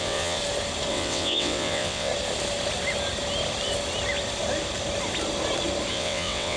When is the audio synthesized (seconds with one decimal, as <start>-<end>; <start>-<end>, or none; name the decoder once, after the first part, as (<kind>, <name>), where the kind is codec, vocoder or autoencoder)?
0.0-0.4 (vocoder, WaveNeXt); 0.9-2.1; 5.9-6.6